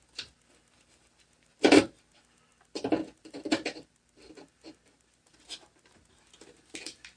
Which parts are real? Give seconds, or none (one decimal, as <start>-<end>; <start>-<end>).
0.0-7.2